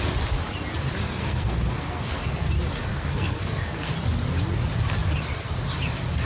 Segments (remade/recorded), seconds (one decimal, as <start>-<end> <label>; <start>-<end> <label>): 0.0-1.2 recorded; 1.2-2.5 remade; 2.5-2.9 recorded; 2.9-3.9 remade; 3.9-6.3 recorded